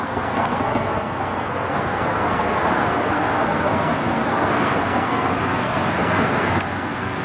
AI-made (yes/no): yes